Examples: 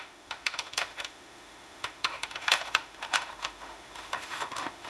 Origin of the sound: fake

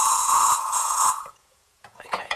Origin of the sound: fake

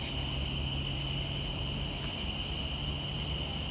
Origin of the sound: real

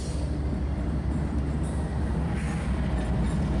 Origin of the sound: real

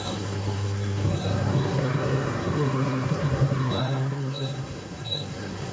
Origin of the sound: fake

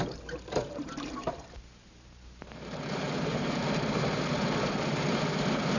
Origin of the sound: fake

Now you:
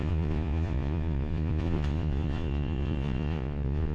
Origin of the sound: fake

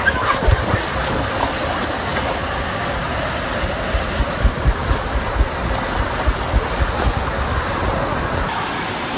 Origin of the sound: real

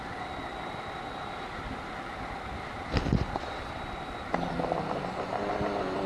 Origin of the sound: real